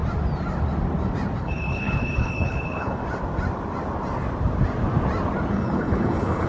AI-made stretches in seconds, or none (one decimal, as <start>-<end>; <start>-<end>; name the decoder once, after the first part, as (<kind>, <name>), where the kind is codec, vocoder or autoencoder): 1.4-3.0 (codec, HILCodec); 5.5-6.5